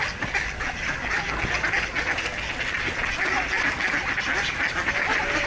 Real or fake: real